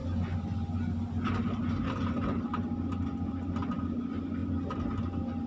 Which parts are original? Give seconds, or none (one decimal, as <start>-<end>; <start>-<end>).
0.0-5.5

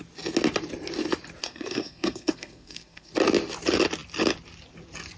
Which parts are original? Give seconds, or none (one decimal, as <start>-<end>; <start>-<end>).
0.0-1.4; 3.1-5.2